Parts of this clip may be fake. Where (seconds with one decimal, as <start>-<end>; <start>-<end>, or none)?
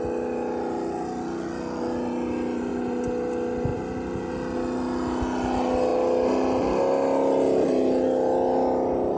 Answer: none